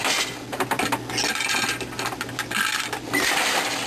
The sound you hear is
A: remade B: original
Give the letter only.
B